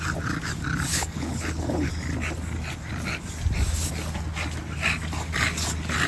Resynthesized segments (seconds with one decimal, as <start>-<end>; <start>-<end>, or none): 0.9-1.9

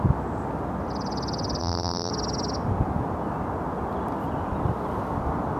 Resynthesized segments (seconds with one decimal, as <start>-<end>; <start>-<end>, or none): 1.6-2.1